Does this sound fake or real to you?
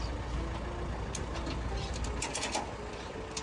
real